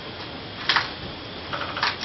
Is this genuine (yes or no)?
yes